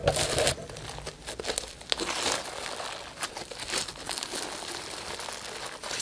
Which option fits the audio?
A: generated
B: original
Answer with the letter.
B